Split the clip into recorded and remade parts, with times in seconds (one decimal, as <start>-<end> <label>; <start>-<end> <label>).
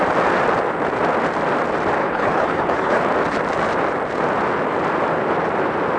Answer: 0.0-2.0 recorded; 2.0-3.0 remade; 3.0-6.0 recorded